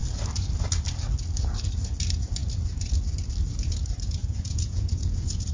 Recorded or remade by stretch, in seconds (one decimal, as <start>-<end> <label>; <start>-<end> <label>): 0.0-4.2 recorded; 4.2-5.5 remade